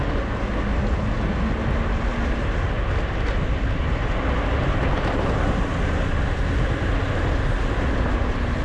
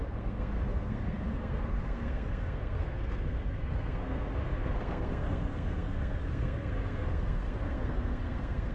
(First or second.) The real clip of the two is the first